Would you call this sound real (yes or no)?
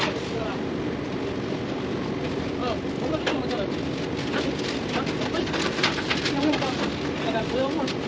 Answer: yes